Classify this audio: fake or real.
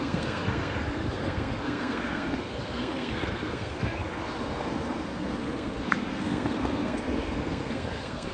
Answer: fake